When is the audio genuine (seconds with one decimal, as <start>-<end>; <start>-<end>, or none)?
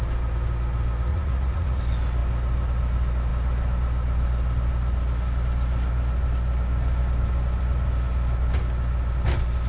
0.0-1.1; 1.8-9.7